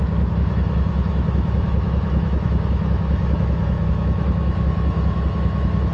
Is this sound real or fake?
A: fake